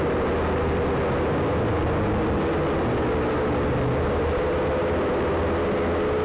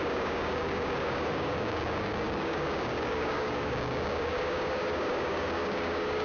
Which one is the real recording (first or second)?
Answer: first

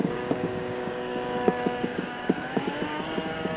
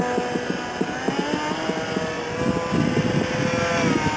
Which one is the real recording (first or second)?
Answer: second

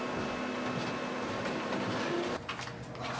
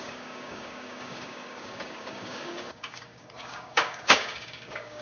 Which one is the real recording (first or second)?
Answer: first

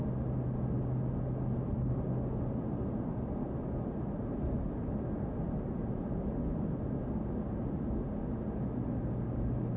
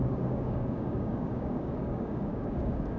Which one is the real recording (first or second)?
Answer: first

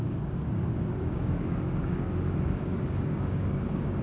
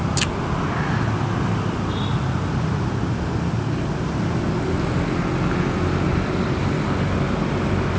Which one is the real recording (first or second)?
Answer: second